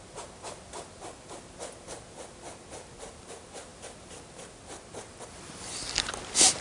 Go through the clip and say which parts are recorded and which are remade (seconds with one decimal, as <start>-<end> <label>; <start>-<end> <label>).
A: 0.0-6.6 recorded